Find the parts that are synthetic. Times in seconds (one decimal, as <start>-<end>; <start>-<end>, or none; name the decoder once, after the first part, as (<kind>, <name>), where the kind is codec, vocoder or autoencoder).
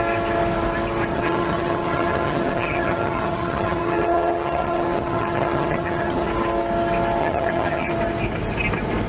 1.1-6.3 (vocoder, HiFi-GAN); 7.2-7.9